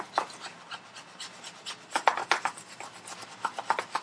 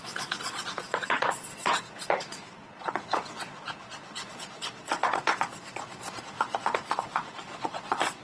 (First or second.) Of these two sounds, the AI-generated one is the second